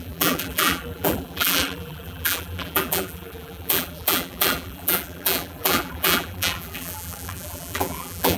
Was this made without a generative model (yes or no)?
no